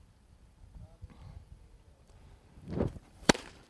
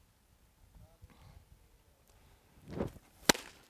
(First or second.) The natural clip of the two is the second